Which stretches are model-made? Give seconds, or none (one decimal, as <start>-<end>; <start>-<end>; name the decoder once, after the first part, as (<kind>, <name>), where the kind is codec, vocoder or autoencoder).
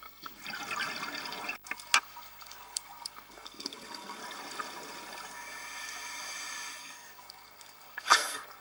0.0-0.4 (codec, SNAC); 2.0-4.2; 6.8-8.6